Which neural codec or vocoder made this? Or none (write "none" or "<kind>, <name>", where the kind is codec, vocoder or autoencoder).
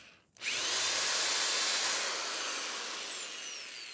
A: none